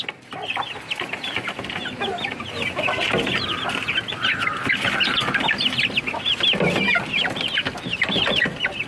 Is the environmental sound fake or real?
real